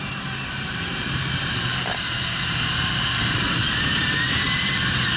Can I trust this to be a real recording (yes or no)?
no